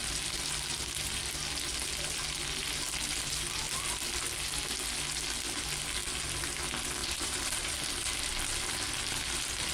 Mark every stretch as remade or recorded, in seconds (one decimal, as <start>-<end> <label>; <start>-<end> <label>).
0.0-7.0 recorded; 7.0-7.7 remade; 7.7-9.7 recorded